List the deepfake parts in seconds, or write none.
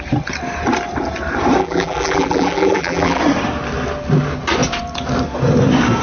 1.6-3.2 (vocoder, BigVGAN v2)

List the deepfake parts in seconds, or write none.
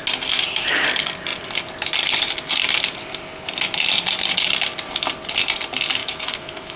6.0-6.8 (autoencoder, DAC-VAE)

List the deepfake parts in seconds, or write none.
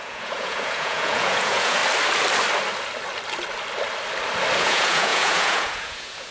0.0-1.8 (vocoder, Vocos); 4.6-6.3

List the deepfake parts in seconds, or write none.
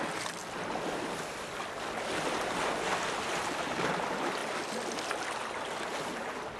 none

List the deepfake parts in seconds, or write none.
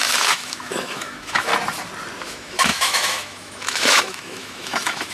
0.0-1.5 (autoencoder, DAC-VAE); 2.2-5.1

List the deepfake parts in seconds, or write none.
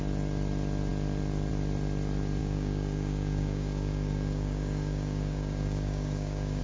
2.4-6.6 (codec, DAC)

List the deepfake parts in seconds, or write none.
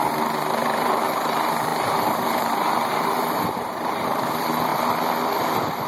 0.0-4.7 (vocoder, BigVGAN v2); 5.4-5.9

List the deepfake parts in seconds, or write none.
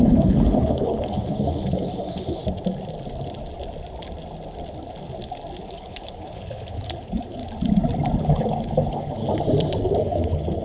0.0-2.4 (codec, HILCodec); 5.6-7.4; 8.2-9.2; 10.0-10.6